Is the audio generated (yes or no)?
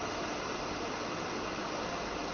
no